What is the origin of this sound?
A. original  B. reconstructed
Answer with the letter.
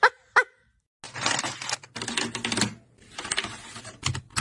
A